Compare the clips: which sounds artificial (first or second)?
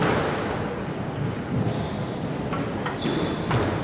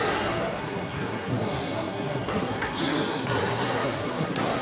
second